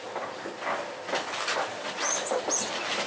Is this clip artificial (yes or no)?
no